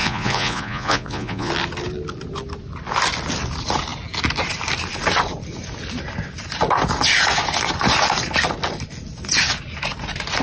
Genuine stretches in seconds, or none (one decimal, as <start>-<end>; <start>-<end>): 1.5-10.4